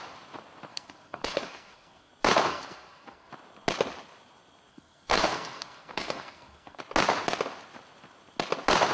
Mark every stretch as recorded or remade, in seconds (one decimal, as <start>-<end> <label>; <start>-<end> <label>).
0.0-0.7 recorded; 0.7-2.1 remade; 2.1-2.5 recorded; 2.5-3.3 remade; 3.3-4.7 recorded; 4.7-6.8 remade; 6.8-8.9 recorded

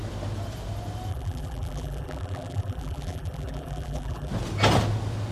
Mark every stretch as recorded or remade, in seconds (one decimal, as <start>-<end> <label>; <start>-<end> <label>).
0.0-1.1 recorded; 1.1-4.3 remade; 4.3-5.3 recorded

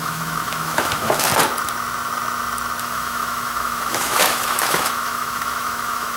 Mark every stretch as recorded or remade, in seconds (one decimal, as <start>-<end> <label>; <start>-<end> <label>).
0.0-1.3 remade; 1.3-2.8 recorded; 2.8-6.2 remade

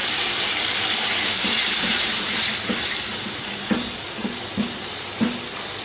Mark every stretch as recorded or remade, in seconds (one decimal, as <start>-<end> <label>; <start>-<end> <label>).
0.0-5.8 recorded